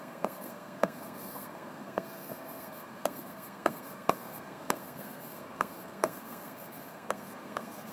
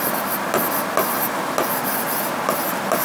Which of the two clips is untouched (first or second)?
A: second